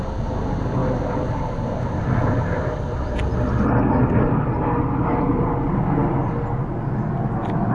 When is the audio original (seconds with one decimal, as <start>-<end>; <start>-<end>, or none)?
3.3-5.0; 6.0-7.7